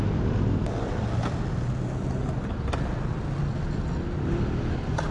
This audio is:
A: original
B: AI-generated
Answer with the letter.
A